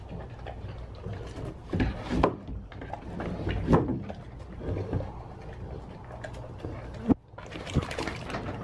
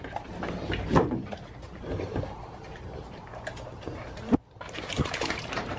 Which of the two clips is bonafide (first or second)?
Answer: first